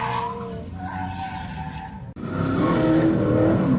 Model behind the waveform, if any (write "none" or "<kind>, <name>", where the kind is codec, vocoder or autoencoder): none